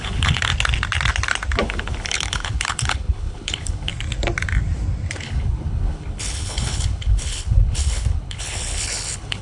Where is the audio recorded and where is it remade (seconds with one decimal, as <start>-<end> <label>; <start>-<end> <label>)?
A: 0.0-0.5 remade; 0.5-1.6 recorded; 1.6-3.9 remade; 3.9-5.2 recorded; 5.2-9.4 remade